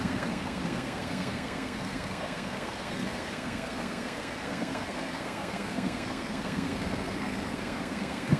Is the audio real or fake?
fake